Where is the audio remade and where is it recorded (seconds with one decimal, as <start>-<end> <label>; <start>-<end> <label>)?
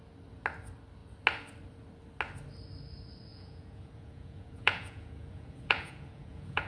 0.0-3.3 recorded; 3.3-6.7 remade